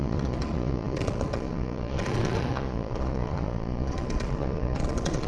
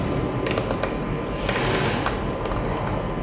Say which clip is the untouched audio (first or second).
second